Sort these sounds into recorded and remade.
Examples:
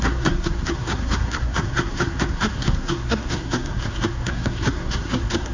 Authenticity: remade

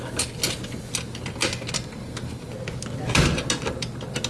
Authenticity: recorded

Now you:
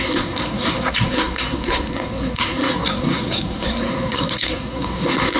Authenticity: remade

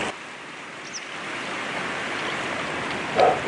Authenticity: recorded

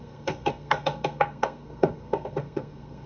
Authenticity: remade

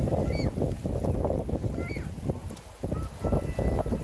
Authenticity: recorded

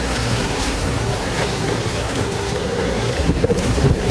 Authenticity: remade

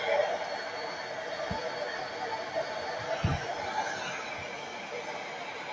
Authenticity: recorded